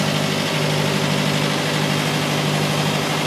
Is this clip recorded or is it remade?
recorded